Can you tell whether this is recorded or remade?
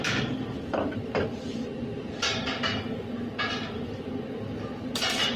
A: recorded